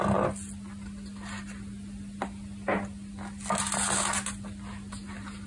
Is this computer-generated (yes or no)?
no